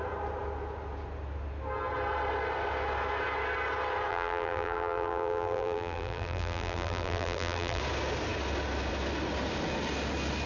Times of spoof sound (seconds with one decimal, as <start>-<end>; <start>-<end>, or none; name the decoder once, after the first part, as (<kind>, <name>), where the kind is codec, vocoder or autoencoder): 4.1-7.8 (vocoder, BigVGAN v2)